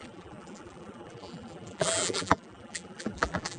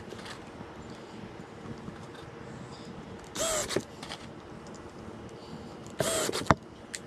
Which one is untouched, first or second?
second